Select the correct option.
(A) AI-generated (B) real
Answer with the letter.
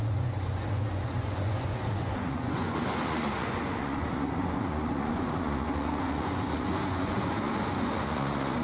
A